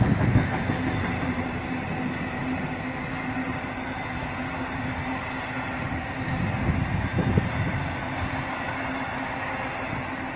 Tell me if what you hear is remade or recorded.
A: recorded